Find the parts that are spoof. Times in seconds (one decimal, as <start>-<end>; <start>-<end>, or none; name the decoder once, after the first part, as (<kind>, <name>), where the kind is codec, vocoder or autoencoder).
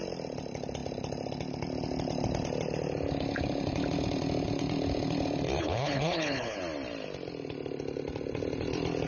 5.6-6.6 (codec, HILCodec)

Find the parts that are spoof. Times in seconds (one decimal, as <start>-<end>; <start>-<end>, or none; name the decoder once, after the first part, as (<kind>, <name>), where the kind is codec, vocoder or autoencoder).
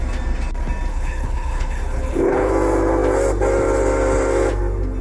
0.9-2.5 (codec, HILCodec)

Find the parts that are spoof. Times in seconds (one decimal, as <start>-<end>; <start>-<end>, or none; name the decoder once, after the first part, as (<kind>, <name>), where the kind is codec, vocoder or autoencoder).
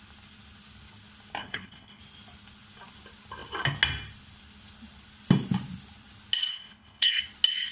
1.4-2.0 (codec, HILCodec); 6.5-7.2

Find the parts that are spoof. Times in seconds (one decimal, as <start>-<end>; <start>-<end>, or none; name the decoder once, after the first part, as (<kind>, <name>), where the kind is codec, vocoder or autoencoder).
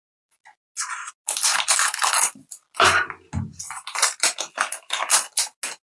none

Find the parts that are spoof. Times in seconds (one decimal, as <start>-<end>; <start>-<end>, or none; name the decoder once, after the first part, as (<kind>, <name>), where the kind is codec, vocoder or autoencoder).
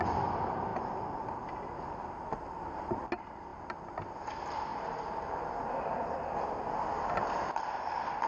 none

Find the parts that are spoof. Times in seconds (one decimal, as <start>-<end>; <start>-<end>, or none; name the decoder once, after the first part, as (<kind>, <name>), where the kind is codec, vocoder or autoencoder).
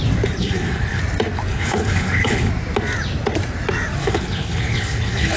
0.4-1.0 (codec, HILCodec); 1.5-2.5; 4.0-5.4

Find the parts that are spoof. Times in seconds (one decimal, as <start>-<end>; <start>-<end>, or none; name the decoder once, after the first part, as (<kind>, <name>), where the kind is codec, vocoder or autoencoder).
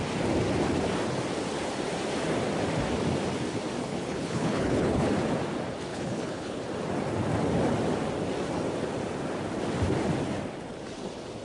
3.9-5.1 (codec, HILCodec); 5.9-6.6